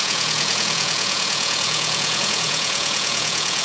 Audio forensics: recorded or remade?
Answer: remade